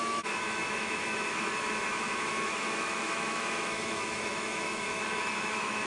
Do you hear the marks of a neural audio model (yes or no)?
yes